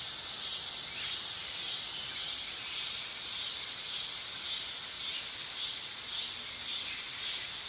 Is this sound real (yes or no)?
yes